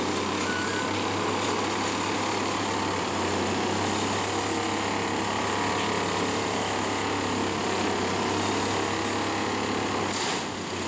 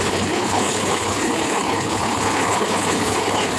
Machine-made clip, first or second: second